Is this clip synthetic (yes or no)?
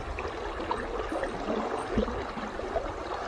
no